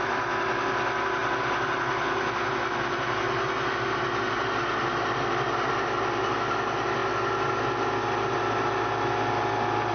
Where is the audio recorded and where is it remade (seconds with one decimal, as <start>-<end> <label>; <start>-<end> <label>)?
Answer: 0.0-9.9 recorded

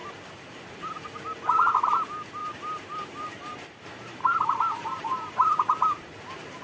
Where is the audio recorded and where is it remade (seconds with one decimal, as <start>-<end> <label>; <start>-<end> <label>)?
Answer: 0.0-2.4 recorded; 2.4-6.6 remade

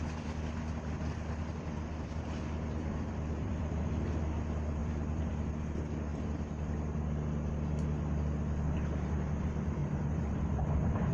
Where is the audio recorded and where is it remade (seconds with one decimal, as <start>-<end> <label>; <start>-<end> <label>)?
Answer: 0.0-1.5 recorded; 1.5-4.2 remade; 4.2-4.8 recorded; 4.8-5.5 remade; 5.5-6.1 recorded; 6.1-7.5 remade; 7.5-9.8 recorded; 9.8-10.4 remade; 10.4-11.1 recorded